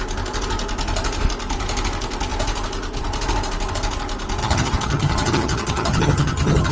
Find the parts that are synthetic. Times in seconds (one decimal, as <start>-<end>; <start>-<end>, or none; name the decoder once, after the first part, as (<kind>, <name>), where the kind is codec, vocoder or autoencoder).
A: 4.4-6.7 (vocoder, HiFi-GAN)